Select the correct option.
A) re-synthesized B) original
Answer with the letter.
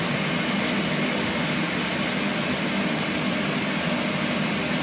B